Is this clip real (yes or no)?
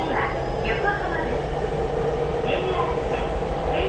yes